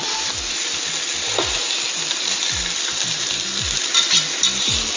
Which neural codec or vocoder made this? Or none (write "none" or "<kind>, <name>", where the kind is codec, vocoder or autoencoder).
none